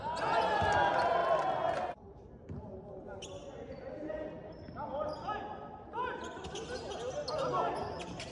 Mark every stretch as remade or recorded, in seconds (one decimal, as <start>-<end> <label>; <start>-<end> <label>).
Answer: 0.0-8.3 recorded